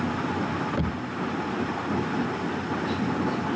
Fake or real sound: real